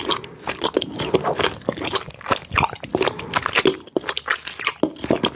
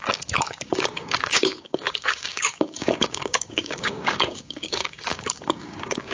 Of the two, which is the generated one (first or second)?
second